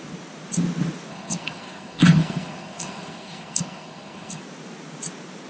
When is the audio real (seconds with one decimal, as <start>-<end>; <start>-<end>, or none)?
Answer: 0.0-1.1; 4.4-5.5